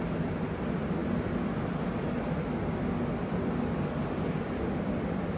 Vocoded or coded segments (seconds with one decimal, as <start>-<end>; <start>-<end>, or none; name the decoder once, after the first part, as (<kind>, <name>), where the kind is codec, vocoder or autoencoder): none